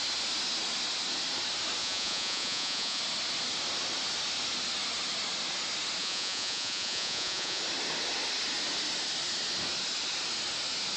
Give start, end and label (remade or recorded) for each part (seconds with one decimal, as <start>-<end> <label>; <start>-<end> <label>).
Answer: 0.0-1.8 recorded; 1.8-3.0 remade; 3.0-6.0 recorded; 6.0-7.6 remade; 7.6-11.0 recorded